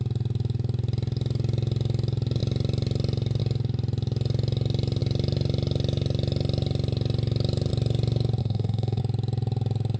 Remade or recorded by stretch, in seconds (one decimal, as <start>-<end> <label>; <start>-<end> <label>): 0.0-8.4 recorded; 8.4-9.0 remade; 9.0-10.0 recorded